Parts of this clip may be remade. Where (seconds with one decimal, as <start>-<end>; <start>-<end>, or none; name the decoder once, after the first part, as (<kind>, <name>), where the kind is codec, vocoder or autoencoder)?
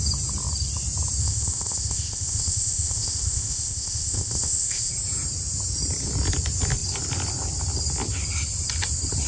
1.2-4.9 (codec, ZipCodec)